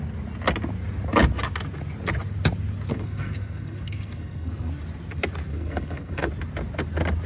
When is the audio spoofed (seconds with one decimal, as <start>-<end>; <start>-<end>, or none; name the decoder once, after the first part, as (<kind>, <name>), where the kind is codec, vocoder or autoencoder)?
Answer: 2.9-4.7 (codec, SNAC); 5.5-6.3